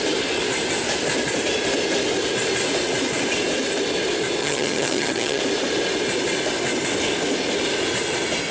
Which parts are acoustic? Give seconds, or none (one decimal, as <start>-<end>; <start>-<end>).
0.0-4.4; 5.4-8.5